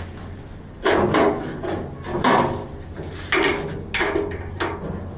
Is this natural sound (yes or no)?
yes